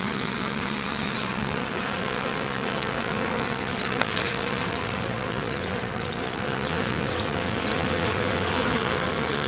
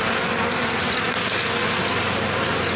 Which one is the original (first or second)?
second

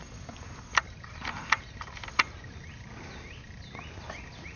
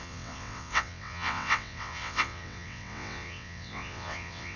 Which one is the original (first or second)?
first